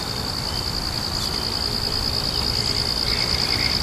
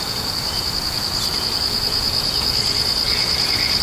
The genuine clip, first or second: first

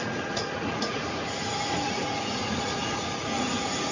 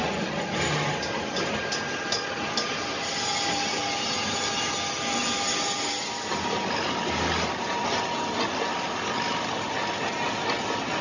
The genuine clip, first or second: second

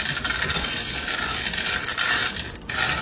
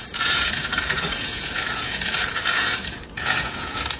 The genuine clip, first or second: first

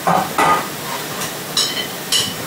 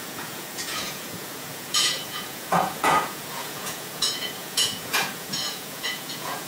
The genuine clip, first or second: first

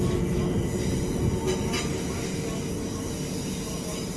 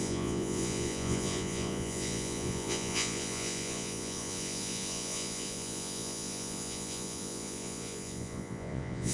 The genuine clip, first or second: first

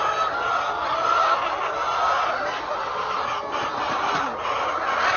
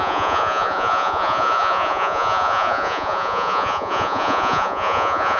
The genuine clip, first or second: first